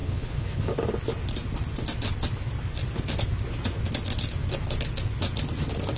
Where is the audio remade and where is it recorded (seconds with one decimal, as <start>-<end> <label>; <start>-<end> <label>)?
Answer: 0.0-0.7 remade; 0.7-6.0 recorded